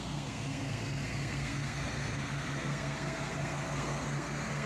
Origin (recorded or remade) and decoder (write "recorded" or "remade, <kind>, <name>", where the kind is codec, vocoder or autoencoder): remade, codec, SNAC